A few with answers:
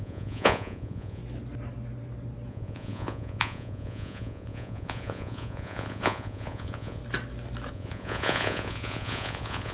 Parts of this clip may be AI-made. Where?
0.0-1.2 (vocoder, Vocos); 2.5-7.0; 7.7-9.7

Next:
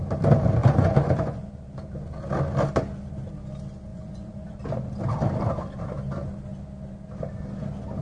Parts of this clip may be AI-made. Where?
0.6-1.5 (vocoder, Vocos); 3.9-4.6

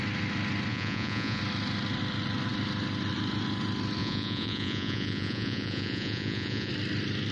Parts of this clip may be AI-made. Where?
0.7-1.4 (vocoder, Vocos); 4.0-6.7

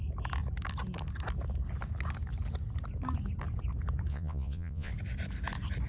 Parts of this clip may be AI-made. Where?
4.1-4.9 (vocoder, Vocos)

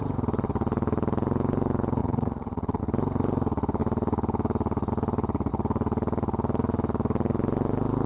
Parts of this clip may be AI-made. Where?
2.0-2.8 (vocoder, Vocos)

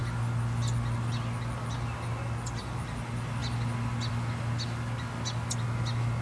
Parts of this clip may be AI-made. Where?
none